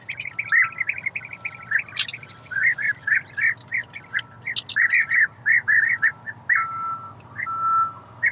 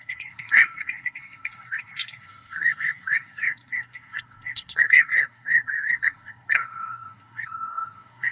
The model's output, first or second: second